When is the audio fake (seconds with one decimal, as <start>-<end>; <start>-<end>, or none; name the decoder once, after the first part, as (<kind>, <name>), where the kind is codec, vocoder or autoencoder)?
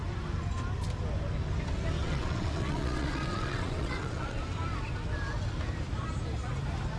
2.0-4.4 (vocoder, WaveNeXt)